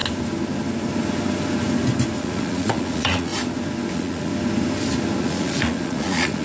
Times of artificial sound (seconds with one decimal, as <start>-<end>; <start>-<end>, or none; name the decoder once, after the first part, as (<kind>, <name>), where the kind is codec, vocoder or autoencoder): 2.2-3.3 (vocoder, Vocos); 3.9-4.3; 5.2-6.4

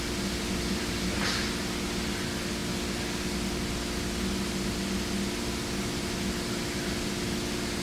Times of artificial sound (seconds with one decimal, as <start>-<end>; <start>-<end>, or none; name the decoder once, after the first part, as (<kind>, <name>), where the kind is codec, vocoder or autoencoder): none

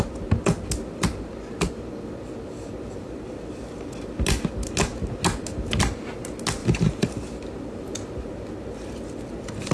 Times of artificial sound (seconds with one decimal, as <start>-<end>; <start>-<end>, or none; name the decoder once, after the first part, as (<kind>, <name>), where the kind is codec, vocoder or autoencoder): none

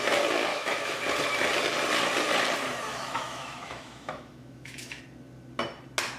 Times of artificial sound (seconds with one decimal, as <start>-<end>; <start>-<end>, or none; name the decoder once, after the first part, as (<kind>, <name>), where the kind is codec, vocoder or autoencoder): 0.5-1.0 (autoencoder, DAC-VAE); 2.9-5.0

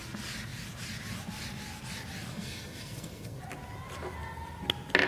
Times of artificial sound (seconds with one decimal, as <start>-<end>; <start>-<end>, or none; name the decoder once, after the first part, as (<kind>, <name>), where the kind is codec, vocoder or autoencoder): 2.3-3.4 (codec, SNAC)